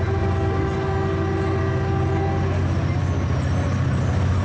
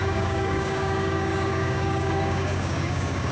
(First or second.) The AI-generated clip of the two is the second